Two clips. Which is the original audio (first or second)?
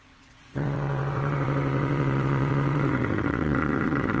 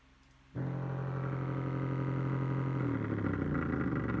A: second